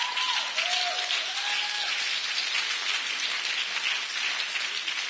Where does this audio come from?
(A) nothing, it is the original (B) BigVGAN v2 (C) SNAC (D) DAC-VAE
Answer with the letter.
A